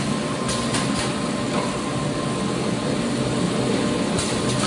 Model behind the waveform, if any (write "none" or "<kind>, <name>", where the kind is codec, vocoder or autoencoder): none